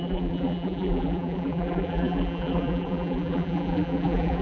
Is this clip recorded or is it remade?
remade